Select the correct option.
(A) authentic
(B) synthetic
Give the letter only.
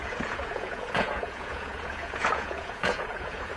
B